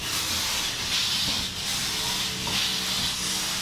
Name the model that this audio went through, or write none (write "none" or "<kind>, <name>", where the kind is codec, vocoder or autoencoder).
none